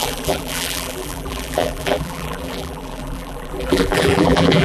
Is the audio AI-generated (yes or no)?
yes